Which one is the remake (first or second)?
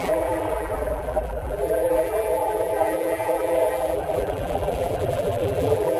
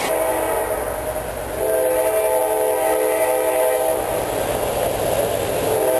first